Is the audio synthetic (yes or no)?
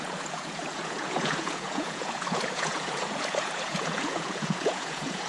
yes